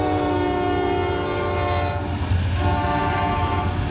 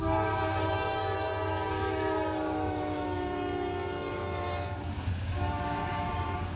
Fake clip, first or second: second